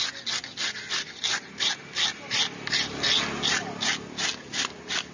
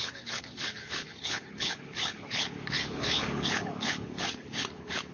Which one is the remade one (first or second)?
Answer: second